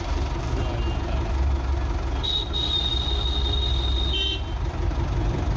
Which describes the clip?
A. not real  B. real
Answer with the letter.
B